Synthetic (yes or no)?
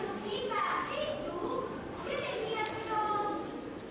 yes